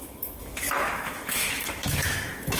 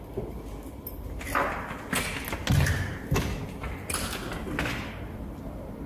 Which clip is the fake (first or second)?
first